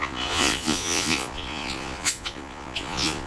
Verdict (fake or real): fake